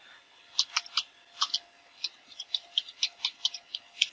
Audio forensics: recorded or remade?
recorded